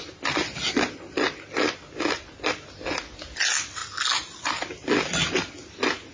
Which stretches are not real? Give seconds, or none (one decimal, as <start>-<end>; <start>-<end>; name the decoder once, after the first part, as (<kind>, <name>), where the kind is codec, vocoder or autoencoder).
none